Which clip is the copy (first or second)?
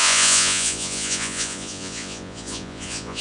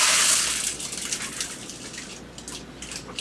first